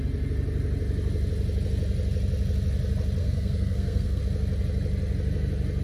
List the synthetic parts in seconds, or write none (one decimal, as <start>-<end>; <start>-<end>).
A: 3.2-4.2